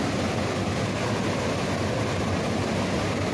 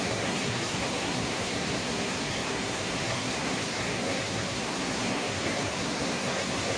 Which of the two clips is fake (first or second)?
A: second